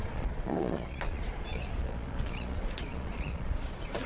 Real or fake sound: fake